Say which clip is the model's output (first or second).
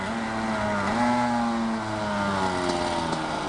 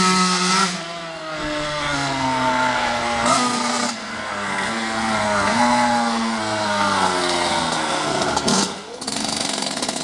second